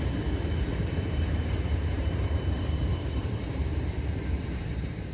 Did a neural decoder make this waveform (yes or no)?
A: yes